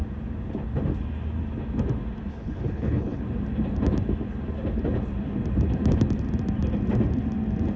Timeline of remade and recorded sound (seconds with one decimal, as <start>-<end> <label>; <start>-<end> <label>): 0.0-2.3 recorded; 2.3-3.2 remade; 3.2-7.8 recorded